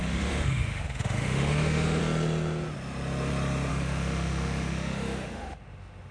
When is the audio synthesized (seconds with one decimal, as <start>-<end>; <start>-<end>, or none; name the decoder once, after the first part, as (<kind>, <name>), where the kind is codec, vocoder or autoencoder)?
0.0-2.0 (autoencoder, DAC-VAE); 3.7-6.1